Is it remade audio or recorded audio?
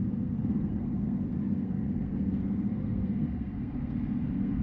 remade